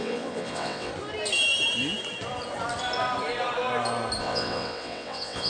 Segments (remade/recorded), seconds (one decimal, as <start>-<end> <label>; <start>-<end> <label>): 0.0-0.9 remade; 0.9-4.2 recorded; 4.2-5.5 remade